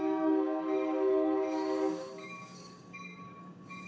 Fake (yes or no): yes